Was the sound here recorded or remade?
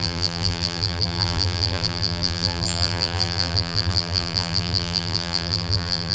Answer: remade